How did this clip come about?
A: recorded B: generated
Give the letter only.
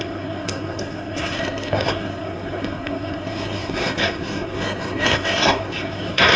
B